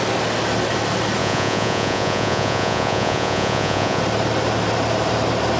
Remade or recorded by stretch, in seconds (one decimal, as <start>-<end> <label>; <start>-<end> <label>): 0.0-1.2 recorded; 1.2-4.0 remade; 4.0-5.6 recorded